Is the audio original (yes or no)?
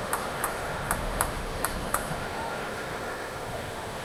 no